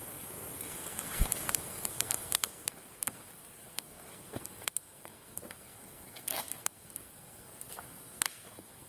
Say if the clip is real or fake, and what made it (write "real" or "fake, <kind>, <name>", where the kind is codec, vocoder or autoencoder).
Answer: fake, codec, SNAC